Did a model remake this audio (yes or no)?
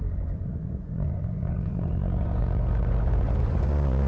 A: yes